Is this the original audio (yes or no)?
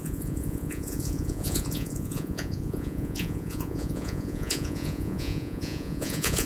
no